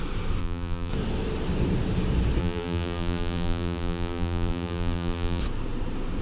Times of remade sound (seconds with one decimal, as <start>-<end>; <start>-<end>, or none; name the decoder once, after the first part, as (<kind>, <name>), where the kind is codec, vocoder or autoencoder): 0.4-0.9 (vocoder, BigVGAN v2); 2.4-5.4